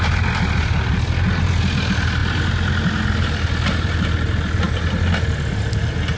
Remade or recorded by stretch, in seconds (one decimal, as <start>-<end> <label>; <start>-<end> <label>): 0.0-6.2 recorded